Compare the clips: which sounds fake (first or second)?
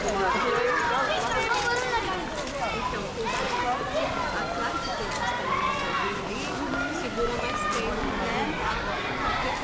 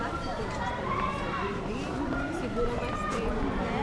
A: second